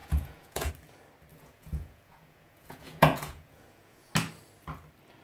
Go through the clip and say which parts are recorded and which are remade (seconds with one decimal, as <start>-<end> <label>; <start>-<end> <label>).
0.0-0.7 remade; 0.7-1.3 recorded; 1.3-4.1 remade; 4.1-5.2 recorded